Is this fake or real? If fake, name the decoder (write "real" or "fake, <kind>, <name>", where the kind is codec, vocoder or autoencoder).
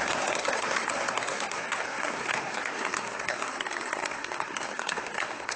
fake, codec, SNAC